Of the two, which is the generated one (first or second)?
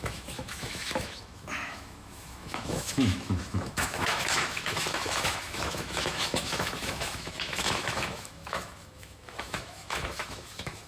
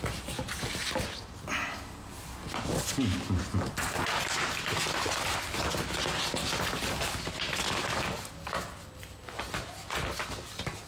first